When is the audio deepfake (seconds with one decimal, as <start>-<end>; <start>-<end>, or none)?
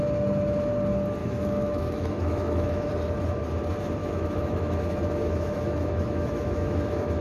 1.2-2.9; 4.0-7.2